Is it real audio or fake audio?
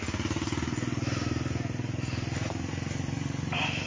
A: real